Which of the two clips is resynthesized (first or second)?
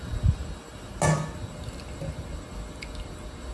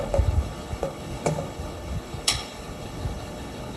second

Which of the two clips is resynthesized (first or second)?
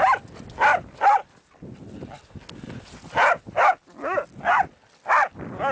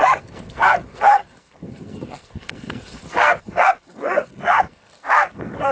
second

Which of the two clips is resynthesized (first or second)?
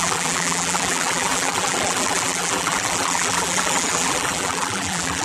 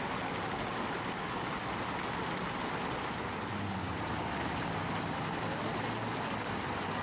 first